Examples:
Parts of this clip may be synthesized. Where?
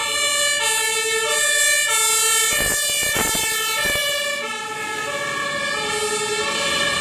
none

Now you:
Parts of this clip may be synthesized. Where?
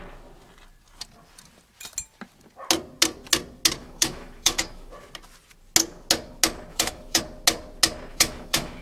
3.8-4.9 (autoencoder, DAC-VAE); 6.7-7.2; 8.1-8.8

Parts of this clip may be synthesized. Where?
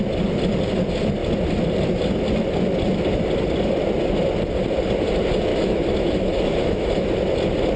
5.5-7.1 (autoencoder, DAC-VAE)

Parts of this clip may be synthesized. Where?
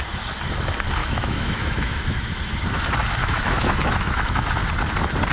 1.0-2.4 (autoencoder, DAC-VAE); 3.2-4.5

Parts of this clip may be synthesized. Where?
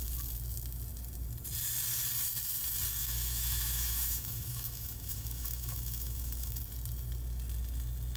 3.0-6.6 (autoencoder, DAC-VAE)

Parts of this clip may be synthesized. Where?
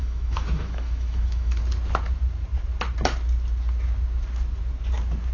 0.0-1.6 (autoencoder, DAC-VAE)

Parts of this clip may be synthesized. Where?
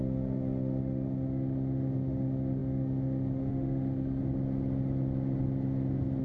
0.0-4.2 (autoencoder, DAC-VAE)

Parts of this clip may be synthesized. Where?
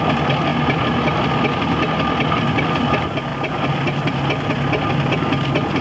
none